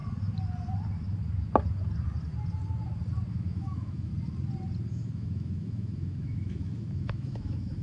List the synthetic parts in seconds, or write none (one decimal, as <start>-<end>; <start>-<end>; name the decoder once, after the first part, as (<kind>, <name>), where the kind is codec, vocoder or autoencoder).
3.3-4.1 (autoencoder, DAC-VAE); 4.9-7.8